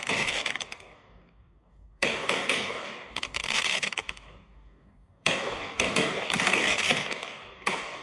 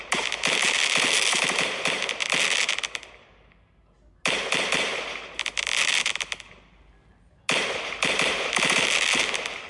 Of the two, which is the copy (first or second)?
first